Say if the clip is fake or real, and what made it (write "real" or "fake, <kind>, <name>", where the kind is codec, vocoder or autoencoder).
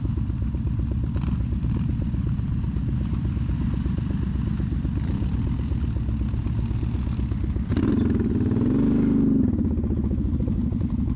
real